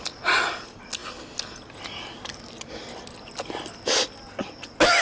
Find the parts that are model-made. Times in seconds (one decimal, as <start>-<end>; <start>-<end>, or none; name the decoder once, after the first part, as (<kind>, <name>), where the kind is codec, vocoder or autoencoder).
none

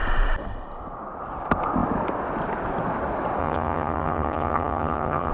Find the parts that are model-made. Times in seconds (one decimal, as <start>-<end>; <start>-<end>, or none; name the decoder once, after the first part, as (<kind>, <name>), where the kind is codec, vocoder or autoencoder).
3.4-5.3 (vocoder, HiFi-GAN)

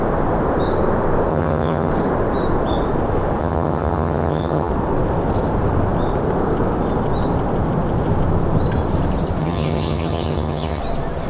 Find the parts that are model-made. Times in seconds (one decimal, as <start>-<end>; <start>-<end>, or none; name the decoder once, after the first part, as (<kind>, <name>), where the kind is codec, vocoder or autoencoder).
1.3-1.9 (vocoder, HiFi-GAN); 3.4-4.7; 9.4-10.8

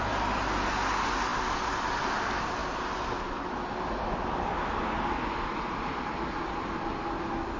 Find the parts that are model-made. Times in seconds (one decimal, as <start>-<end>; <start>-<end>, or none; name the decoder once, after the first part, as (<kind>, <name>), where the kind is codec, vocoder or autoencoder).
none